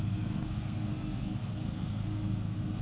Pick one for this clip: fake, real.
fake